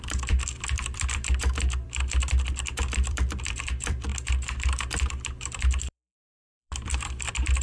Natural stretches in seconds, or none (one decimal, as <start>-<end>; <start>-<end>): 4.1-5.1